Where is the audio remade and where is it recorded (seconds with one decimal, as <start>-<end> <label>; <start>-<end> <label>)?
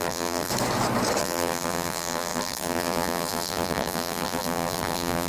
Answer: 0.0-0.5 remade; 0.5-1.2 recorded; 1.2-5.3 remade